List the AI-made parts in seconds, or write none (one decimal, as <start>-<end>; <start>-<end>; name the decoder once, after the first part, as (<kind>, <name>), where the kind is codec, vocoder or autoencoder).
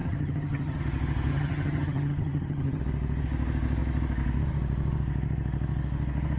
0.0-0.8 (vocoder, HiFi-GAN); 1.3-2.8